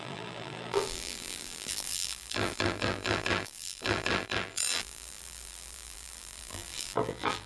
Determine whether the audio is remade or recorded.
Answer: remade